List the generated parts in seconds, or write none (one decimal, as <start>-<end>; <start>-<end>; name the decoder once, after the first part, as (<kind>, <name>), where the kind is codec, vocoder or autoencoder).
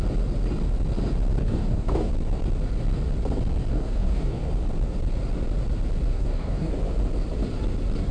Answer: 1.4-2.1 (codec, DAC); 3.7-4.5; 6.1-6.7